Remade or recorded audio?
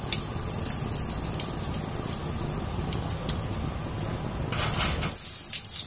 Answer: recorded